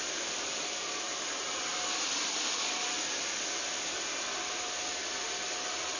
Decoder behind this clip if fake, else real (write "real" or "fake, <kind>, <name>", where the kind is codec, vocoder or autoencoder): real